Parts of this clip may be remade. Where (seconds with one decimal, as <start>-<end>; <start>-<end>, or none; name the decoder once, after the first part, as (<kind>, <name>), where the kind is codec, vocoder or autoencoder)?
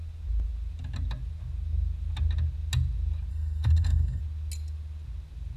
3.3-4.2 (codec, SNAC)